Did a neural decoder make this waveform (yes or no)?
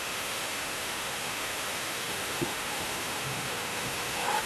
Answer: yes